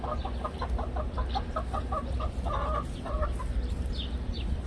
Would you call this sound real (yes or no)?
yes